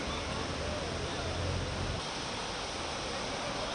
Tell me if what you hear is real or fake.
real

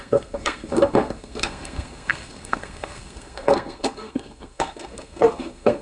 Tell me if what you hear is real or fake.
fake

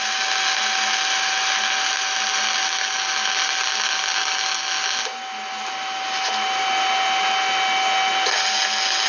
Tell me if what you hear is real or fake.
real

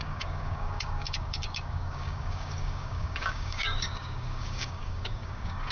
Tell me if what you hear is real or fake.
fake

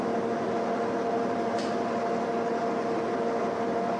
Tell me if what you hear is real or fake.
real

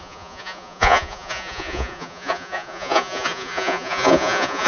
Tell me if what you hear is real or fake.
fake